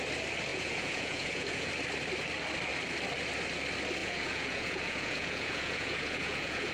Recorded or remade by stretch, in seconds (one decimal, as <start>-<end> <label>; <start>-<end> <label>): 0.0-0.5 recorded; 0.5-1.7 remade; 1.7-4.0 recorded; 4.0-6.7 remade